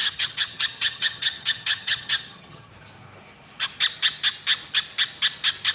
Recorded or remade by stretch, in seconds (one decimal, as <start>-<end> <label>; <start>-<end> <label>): 0.0-2.7 remade; 2.7-5.7 recorded